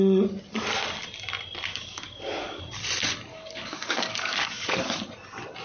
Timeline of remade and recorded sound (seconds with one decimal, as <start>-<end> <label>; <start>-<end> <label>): 0.0-1.7 recorded; 1.7-2.6 remade; 2.6-3.3 recorded; 3.3-5.0 remade; 5.0-5.6 recorded